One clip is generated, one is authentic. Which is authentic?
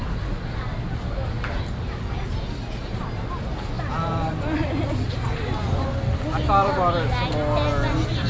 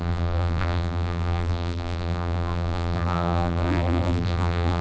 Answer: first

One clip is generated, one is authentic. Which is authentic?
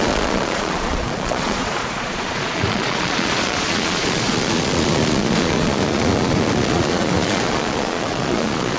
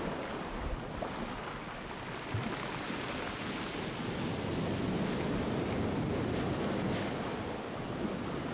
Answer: second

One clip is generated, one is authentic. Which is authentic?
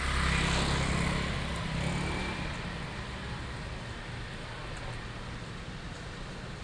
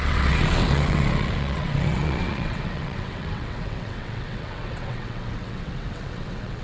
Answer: first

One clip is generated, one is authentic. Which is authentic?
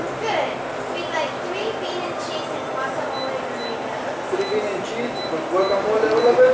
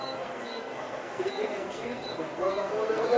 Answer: first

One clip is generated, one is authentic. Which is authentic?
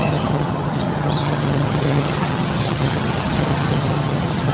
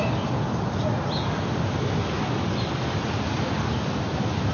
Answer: second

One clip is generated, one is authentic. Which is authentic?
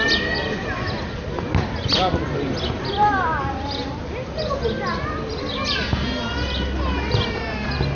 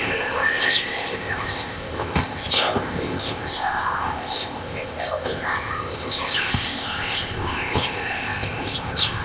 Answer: first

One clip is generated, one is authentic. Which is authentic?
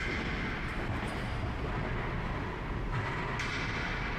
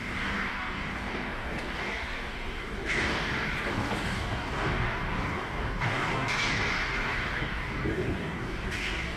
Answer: first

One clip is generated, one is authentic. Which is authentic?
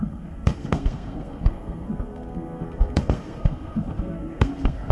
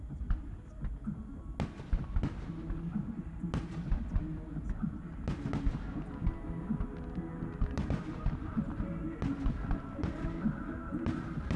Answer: second